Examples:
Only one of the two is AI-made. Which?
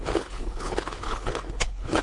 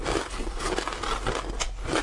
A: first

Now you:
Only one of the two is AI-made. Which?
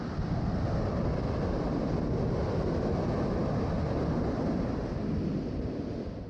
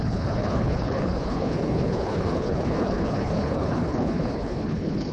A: second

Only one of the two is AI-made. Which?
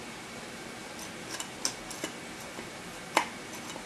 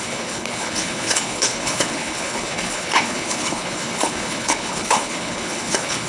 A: second